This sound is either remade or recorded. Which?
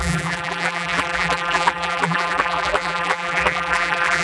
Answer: remade